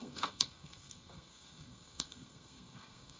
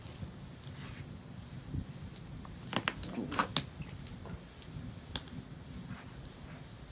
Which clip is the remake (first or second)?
first